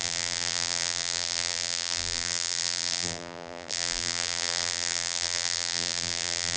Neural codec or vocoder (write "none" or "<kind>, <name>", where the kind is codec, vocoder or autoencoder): vocoder, BigVGAN v2